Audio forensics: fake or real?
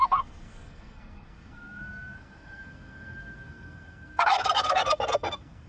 fake